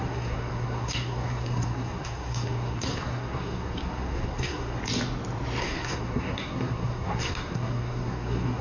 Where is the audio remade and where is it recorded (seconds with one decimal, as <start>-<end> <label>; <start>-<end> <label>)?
0.0-4.8 remade; 4.8-5.6 recorded; 5.6-8.6 remade